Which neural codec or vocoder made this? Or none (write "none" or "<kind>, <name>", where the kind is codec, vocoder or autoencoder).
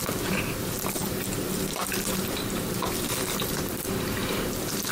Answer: vocoder, BigVGAN v2